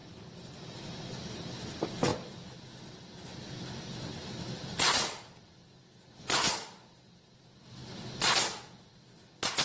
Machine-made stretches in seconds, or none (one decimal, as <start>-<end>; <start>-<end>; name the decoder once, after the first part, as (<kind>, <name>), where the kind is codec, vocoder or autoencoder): none